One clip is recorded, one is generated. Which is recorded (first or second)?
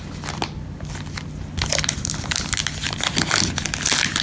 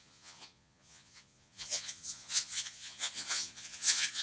first